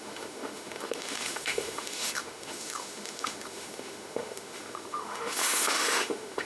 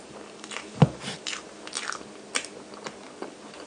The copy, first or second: first